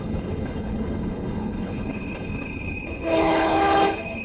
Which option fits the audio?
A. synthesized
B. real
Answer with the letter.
A